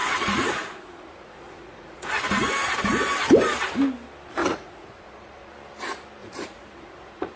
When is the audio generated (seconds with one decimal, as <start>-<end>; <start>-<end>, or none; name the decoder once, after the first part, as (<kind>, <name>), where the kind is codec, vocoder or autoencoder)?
0.0-2.1 (vocoder, Vocos); 4.4-5.5; 6.2-7.4